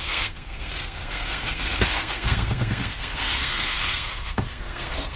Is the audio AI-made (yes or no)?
yes